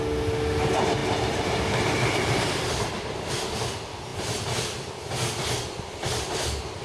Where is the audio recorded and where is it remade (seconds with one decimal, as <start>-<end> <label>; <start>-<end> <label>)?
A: 0.0-6.8 recorded